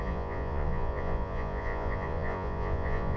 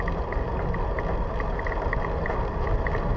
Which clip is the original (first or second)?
second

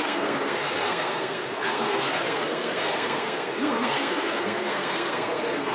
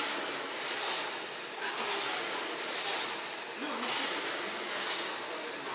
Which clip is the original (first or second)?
second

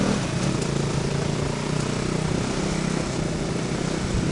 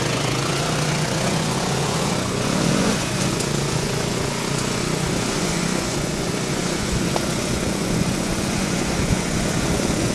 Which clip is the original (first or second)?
first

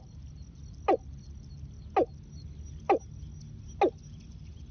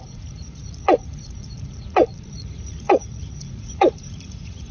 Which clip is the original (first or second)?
first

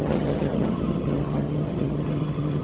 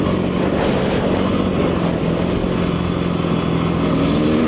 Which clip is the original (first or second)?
second